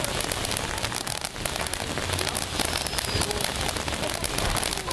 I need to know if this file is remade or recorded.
recorded